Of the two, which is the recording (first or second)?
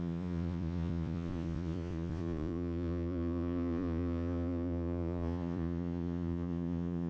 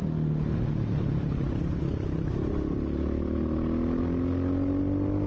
second